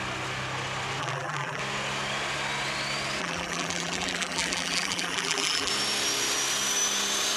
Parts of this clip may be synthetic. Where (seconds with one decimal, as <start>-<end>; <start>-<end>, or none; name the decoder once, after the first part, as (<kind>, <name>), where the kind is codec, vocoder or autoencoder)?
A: 1.0-1.6 (vocoder, BigVGAN v2); 3.2-5.7